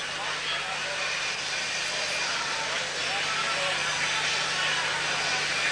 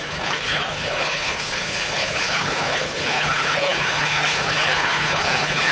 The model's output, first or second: second